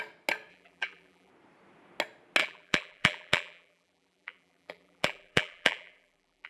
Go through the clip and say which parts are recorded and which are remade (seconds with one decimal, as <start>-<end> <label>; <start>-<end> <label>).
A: 0.0-0.5 recorded; 0.5-1.3 remade; 1.3-2.4 recorded; 2.4-6.5 remade